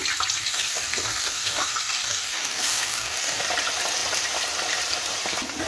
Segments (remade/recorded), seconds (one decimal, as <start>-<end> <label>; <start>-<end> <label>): 0.0-0.4 recorded; 0.4-3.4 remade; 3.4-5.7 recorded